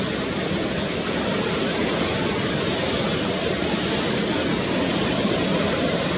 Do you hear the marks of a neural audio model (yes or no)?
no